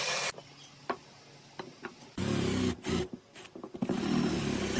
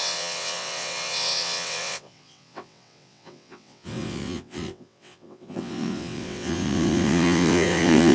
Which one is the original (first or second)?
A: first